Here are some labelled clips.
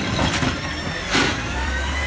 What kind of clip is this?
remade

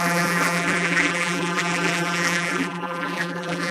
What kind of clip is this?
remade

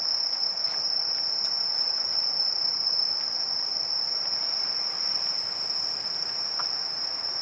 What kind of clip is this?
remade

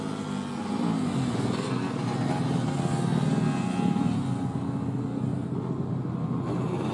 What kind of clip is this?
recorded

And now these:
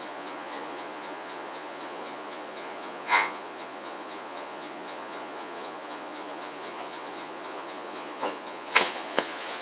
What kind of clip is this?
remade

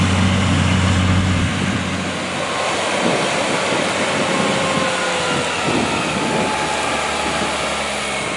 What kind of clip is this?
recorded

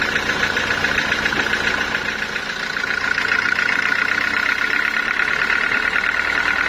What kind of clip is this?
recorded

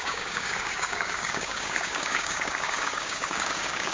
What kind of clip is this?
remade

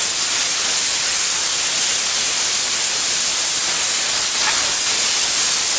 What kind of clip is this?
recorded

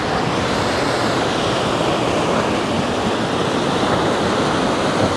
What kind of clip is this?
recorded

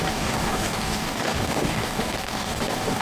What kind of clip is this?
remade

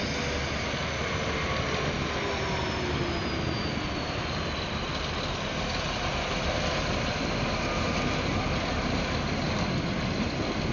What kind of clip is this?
recorded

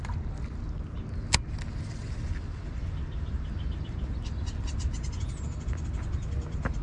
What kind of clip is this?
recorded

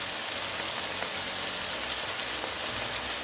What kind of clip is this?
recorded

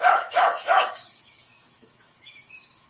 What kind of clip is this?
remade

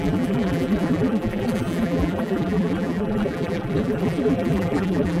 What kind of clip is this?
remade